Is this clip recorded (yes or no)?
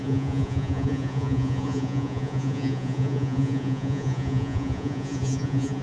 no